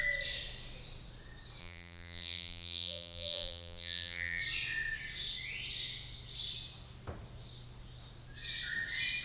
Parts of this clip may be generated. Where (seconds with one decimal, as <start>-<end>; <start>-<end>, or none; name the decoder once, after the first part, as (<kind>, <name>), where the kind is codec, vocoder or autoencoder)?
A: 1.6-4.4 (vocoder, BigVGAN v2)